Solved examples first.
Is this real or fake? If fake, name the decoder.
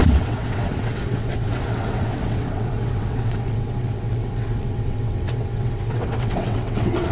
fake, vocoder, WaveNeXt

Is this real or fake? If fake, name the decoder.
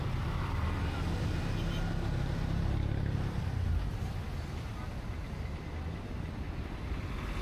real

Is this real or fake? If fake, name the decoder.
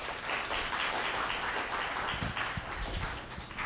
real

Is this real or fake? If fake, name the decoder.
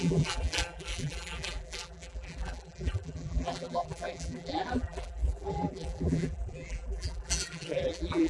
fake, vocoder, BigVGAN v2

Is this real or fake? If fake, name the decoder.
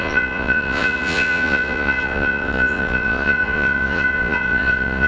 fake, vocoder, Vocos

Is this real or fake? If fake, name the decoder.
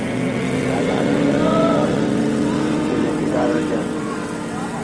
fake, vocoder, WaveNeXt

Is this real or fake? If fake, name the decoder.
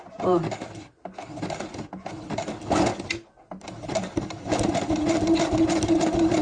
real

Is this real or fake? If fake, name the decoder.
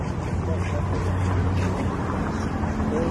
real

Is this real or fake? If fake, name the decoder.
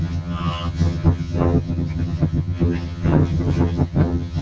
fake, vocoder, HiFi-GAN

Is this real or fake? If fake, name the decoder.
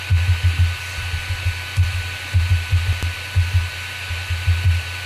real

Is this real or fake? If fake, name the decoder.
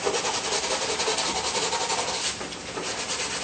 real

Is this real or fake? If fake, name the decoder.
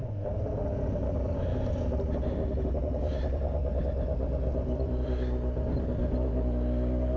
real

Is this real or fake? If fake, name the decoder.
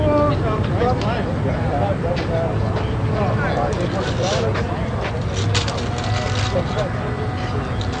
real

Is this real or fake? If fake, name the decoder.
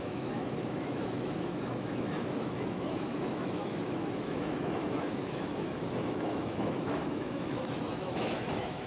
fake, autoencoder, DAC-VAE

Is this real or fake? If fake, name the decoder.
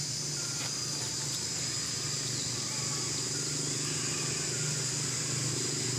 real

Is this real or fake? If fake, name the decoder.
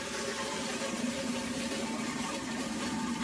fake, vocoder, BigVGAN v2